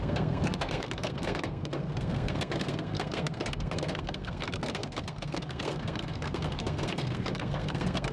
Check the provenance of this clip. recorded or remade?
remade